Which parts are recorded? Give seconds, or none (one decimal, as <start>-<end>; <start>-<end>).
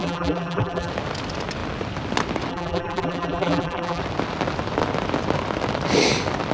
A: 0.9-2.5; 4.0-6.5